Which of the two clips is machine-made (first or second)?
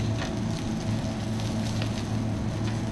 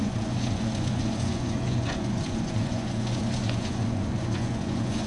second